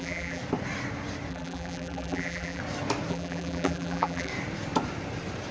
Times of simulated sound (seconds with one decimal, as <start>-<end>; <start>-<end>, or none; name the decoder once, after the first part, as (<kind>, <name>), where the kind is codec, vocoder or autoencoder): 0.0-0.4 (vocoder, BigVGAN v2); 1.3-2.6; 3.1-4.3